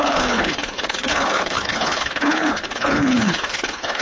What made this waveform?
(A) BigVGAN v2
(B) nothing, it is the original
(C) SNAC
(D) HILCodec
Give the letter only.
D